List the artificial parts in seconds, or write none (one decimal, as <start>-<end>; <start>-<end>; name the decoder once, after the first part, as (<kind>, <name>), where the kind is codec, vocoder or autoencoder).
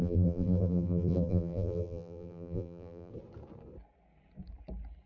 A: 0.0-3.1 (vocoder, BigVGAN v2)